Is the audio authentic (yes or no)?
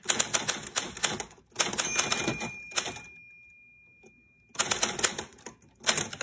yes